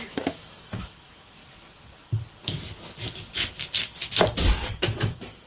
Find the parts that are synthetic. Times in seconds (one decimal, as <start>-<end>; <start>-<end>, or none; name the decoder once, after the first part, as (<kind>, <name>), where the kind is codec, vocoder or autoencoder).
0.0-1.4 (autoencoder, DAC-VAE); 4.7-5.5